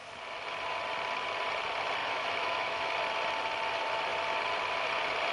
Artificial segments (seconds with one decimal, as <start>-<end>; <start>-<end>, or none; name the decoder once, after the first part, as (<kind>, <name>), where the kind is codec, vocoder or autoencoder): 2.0-2.9 (autoencoder, DAC-VAE)